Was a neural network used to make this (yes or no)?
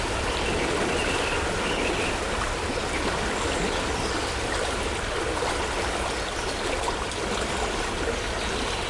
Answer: no